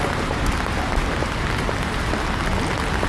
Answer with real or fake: real